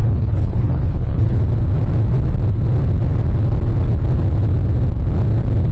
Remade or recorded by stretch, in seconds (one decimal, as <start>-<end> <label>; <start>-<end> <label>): 0.0-1.4 remade; 1.4-5.7 recorded